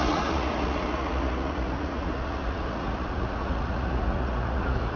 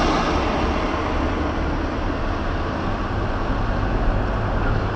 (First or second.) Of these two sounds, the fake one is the first